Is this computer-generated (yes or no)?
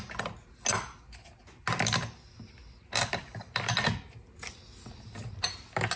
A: no